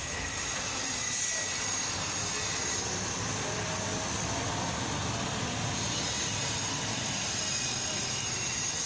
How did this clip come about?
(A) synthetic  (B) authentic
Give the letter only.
A